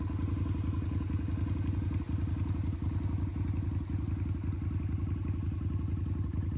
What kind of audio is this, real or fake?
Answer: real